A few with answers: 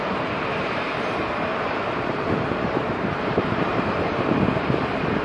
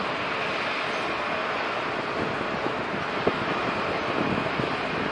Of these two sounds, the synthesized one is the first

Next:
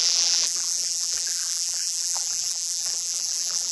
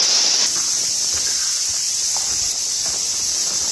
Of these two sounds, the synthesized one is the first